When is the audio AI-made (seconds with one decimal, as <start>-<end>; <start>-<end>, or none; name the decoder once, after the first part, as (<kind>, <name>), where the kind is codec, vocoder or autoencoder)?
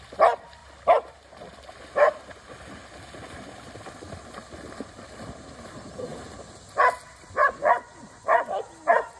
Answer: 7.4-8.6 (vocoder, Vocos)